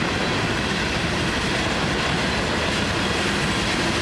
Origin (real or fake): real